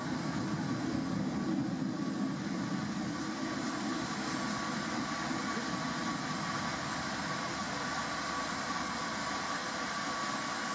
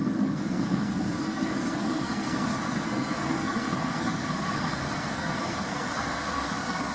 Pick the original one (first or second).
first